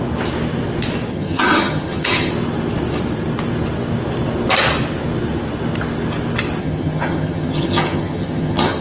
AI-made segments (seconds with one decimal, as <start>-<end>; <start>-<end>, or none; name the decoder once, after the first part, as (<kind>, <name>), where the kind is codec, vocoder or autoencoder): 1.1-2.3 (vocoder, HiFi-GAN); 6.6-8.8